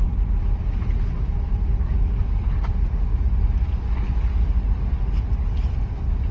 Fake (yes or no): no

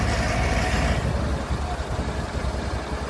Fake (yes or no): no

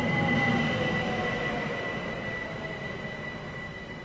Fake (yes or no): no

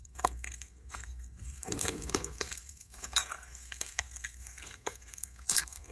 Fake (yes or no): yes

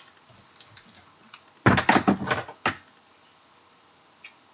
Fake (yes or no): no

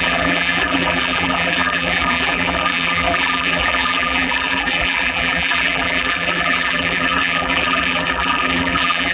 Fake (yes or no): yes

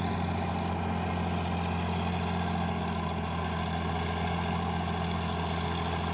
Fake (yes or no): no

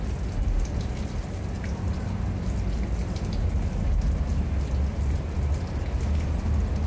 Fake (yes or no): no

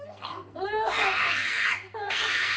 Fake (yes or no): yes